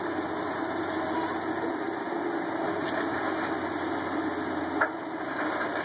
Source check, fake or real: real